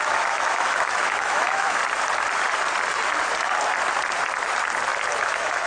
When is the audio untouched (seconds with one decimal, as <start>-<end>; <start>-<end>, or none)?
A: 1.8-5.2

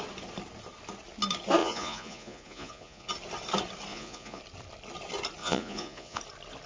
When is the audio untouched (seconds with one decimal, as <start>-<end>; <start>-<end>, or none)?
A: 0.0-1.6; 3.1-3.9; 4.4-5.4; 6.2-6.7